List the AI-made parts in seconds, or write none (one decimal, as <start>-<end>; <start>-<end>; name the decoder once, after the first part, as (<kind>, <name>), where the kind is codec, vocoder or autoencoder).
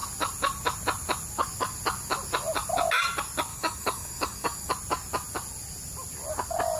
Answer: 3.5-4.7 (codec, DAC)